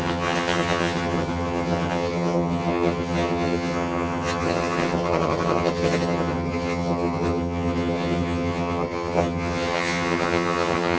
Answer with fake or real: fake